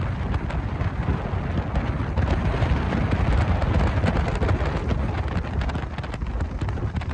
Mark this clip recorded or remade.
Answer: recorded